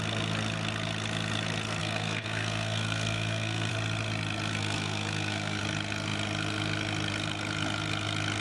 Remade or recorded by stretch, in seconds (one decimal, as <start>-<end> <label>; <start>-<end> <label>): 0.0-1.8 recorded; 1.8-3.7 remade; 3.7-4.5 recorded; 4.5-5.6 remade; 5.6-8.4 recorded